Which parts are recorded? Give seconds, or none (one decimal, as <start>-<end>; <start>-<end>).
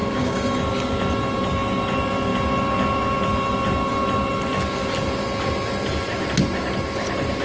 0.6-7.4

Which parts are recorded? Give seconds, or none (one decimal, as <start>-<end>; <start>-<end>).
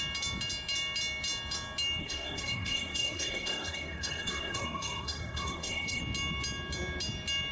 0.0-2.0; 6.0-7.5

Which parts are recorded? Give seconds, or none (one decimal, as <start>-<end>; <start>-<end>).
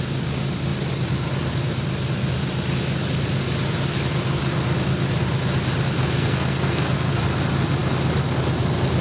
0.0-6.0; 7.2-9.0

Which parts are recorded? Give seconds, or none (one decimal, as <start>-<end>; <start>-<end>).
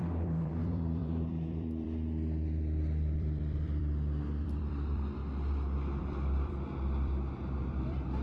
5.2-6.0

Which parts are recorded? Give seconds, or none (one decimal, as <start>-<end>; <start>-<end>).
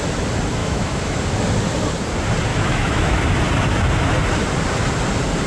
0.0-0.6; 1.2-2.5; 3.2-5.5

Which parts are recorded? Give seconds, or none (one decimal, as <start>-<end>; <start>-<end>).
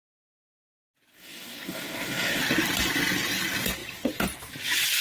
0.0-1.1; 2.4-5.0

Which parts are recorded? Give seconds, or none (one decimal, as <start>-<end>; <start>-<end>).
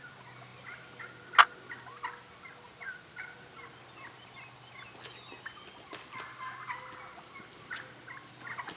0.0-8.8